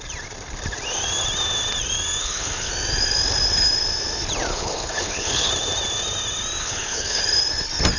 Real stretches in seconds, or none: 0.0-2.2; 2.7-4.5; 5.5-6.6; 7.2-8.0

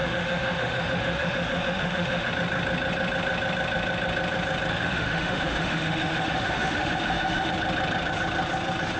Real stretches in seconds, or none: 2.3-4.7; 7.5-9.0

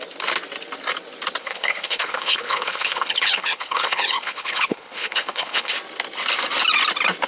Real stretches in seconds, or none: 0.0-1.4; 5.7-7.3

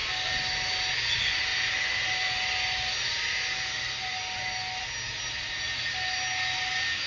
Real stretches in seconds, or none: 0.0-7.1

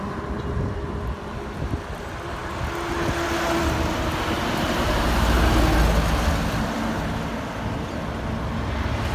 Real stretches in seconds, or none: 0.0-9.1

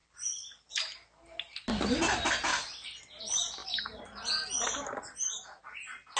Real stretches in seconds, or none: 0.0-3.6; 4.3-6.2